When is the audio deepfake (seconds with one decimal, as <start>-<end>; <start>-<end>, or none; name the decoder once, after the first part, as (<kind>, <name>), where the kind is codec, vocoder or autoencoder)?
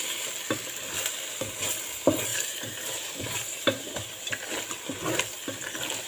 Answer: 2.3-4.5 (vocoder, BigVGAN v2)